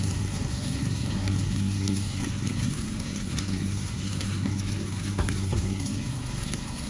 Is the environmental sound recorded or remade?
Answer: remade